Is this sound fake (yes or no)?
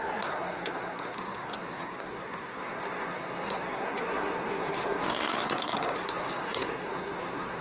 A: yes